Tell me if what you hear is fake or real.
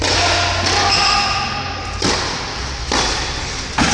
real